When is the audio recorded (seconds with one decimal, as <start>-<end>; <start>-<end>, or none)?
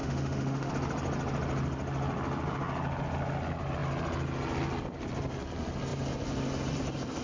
0.7-7.2